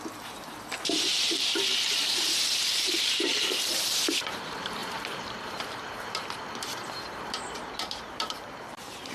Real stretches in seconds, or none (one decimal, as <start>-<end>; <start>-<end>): none